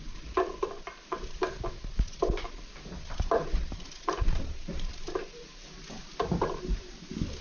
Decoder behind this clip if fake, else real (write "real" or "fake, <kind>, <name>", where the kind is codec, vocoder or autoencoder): real